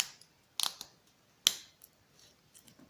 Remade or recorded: recorded